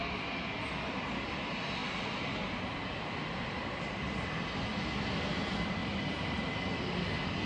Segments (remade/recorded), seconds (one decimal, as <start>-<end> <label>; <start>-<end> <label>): 0.0-5.8 recorded; 5.8-6.6 remade; 6.6-7.5 recorded